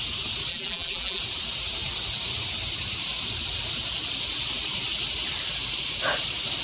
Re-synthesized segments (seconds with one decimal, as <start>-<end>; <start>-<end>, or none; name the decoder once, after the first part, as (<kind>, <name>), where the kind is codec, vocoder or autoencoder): 0.5-1.2 (vocoder, BigVGAN v2)